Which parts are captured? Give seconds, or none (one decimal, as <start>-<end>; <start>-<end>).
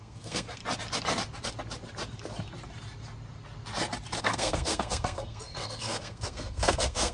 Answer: 0.6-4.2